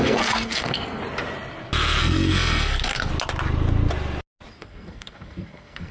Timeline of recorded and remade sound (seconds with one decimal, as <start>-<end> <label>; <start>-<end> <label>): 0.0-1.0 remade; 1.0-2.0 recorded; 2.0-3.1 remade; 3.1-4.6 recorded; 4.6-5.9 remade

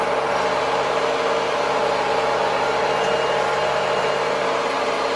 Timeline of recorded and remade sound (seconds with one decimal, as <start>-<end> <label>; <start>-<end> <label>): 0.0-5.2 recorded

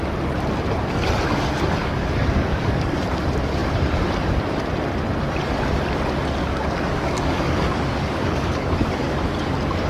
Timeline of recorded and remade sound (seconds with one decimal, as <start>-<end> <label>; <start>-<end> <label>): 0.0-1.8 recorded; 1.8-3.0 remade; 3.0-6.4 recorded; 6.4-9.5 remade; 9.5-9.9 recorded